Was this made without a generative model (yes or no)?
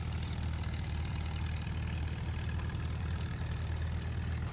yes